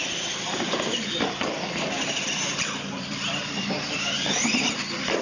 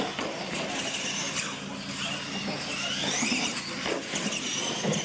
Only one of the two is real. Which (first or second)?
second